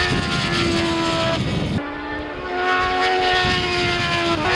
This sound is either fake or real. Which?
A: real